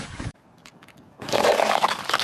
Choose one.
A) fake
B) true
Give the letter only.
A